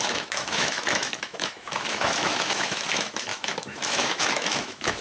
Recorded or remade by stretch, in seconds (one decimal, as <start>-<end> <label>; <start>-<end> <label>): 0.0-5.0 remade